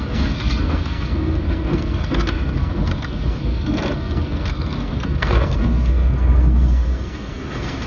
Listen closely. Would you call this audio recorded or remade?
remade